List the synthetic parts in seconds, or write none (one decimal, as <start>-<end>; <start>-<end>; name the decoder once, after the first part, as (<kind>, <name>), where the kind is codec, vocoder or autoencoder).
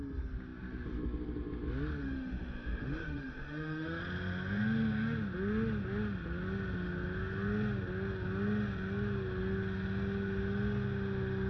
2.0-4.0 (autoencoder, DAC-VAE)